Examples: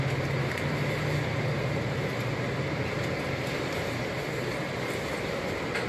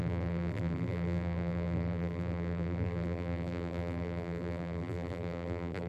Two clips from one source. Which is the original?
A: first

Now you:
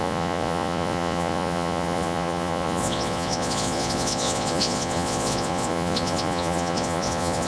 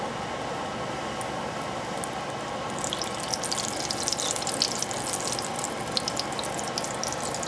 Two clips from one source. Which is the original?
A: second